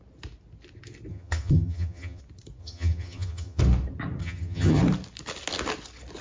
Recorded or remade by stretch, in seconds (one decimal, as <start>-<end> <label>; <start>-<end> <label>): 0.0-1.1 recorded; 1.1-2.2 remade; 2.2-2.6 recorded; 2.6-3.6 remade; 3.6-4.2 recorded; 4.2-4.8 remade; 4.8-6.2 recorded